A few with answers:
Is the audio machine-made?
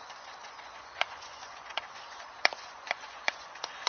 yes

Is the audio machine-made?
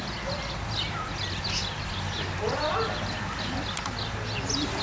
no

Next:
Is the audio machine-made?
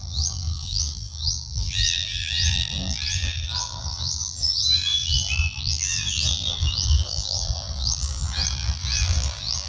yes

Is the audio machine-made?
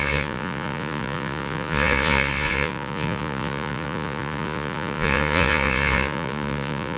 yes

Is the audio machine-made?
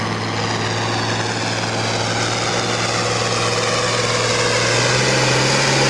no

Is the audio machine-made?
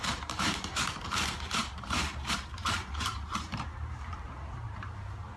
yes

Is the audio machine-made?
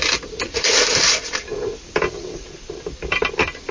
no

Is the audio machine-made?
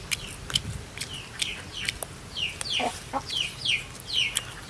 no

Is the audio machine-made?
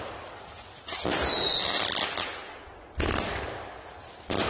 no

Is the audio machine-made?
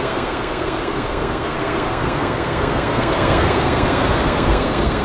yes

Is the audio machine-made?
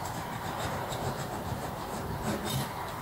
yes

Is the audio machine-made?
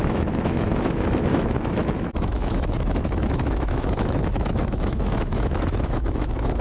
yes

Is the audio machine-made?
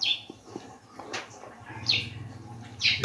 no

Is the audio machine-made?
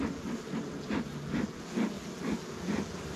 no